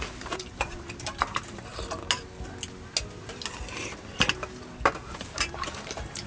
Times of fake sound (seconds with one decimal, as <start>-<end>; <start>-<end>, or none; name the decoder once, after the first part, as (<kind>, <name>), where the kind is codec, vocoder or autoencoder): 0.0-1.7 (vocoder, BigVGAN v2); 5.2-6.3